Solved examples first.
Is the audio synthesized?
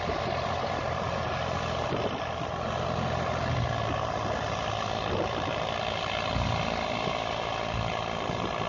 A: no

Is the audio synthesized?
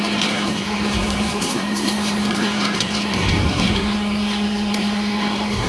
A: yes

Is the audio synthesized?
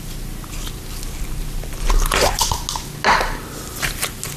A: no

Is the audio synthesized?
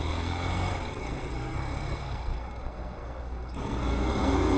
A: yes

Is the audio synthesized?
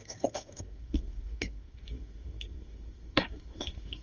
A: yes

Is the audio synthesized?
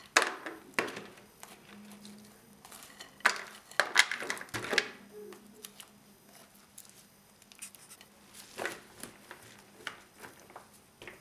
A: no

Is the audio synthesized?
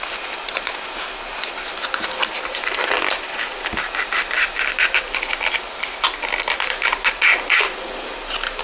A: no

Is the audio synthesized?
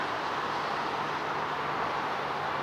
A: no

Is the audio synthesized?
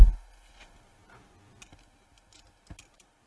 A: no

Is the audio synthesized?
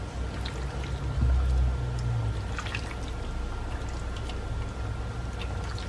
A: no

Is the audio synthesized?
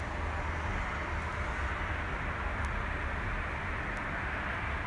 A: no